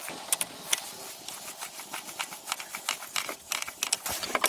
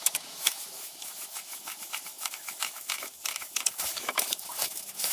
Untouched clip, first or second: first